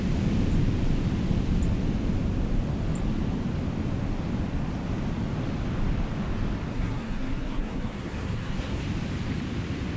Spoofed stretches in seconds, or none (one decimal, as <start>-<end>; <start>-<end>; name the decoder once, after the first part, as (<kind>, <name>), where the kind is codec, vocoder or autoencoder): 6.7-8.8 (codec, SNAC)